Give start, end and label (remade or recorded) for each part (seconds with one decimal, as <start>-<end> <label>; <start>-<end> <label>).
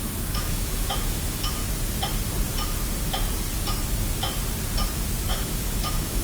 0.0-1.6 remade; 1.6-5.3 recorded; 5.3-6.2 remade